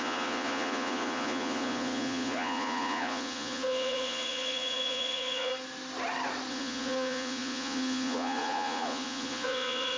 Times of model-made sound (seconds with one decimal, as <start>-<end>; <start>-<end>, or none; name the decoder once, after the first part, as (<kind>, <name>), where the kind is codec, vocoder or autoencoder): 0.0-5.5 (vocoder, Vocos); 6.5-10.0

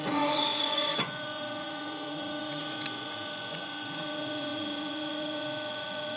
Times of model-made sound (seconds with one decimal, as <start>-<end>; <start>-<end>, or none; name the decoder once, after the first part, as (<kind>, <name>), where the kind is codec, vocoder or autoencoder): 0.0-6.2 (vocoder, Vocos)

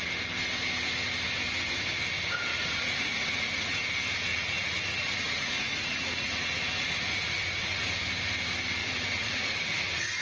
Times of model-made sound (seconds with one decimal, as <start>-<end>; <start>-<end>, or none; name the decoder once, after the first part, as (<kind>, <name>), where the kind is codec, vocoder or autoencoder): 2.5-3.8 (vocoder, Vocos); 4.3-7.8; 8.8-10.2